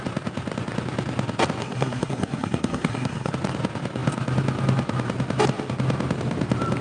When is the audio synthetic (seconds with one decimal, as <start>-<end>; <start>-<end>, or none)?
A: 1.6-3.3